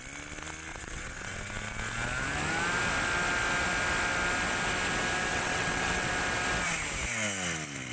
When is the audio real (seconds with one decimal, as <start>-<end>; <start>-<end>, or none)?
0.0-0.7; 1.5-5.3; 6.1-7.9